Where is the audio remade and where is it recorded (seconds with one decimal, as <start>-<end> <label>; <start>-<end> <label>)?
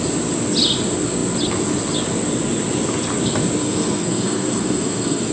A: 0.0-3.6 recorded; 3.6-5.3 remade